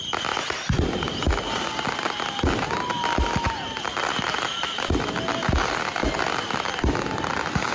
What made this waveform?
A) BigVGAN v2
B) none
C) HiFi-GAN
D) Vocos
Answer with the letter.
B